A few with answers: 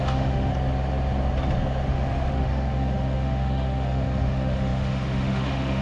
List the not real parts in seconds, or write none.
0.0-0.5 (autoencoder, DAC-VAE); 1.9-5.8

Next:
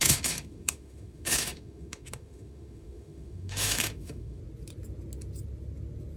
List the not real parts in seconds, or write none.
0.0-4.4 (autoencoder, DAC-VAE)

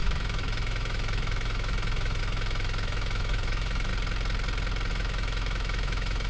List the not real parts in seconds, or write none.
0.0-3.9 (autoencoder, DAC-VAE); 4.9-6.3

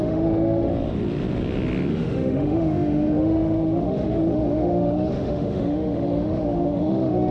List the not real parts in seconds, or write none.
0.0-0.7 (autoencoder, DAC-VAE); 1.9-7.3